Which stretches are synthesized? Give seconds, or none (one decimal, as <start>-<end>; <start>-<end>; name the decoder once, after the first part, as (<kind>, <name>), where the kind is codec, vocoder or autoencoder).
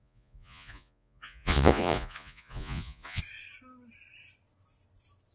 0.0-3.2 (vocoder, Vocos)